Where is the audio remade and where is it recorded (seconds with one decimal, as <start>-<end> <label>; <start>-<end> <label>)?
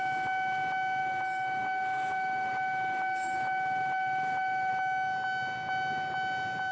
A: 0.0-1.0 recorded; 1.0-4.7 remade; 4.7-6.7 recorded